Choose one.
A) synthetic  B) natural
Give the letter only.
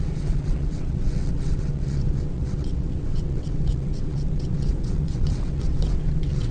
A